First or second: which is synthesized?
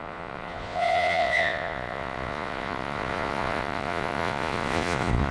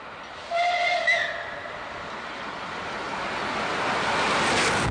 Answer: first